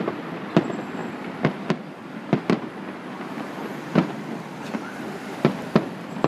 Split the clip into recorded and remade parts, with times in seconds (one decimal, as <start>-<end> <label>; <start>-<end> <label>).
0.0-1.0 remade; 1.0-4.7 recorded; 4.7-6.3 remade